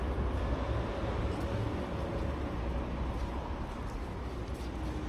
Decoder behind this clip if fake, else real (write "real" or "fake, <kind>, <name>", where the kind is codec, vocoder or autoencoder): real